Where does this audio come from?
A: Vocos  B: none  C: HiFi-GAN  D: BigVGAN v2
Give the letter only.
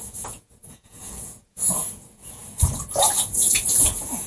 A